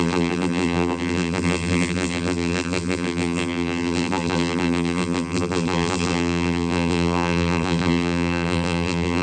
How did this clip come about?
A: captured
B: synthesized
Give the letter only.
B